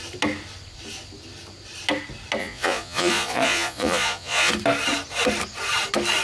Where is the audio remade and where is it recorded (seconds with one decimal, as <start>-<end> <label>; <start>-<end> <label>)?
0.0-2.4 recorded; 2.4-4.5 remade; 4.5-6.2 recorded